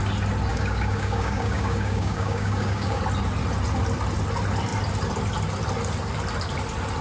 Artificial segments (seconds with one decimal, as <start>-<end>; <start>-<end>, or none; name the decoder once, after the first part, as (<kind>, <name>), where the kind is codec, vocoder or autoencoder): 0.5-3.0 (codec, DAC)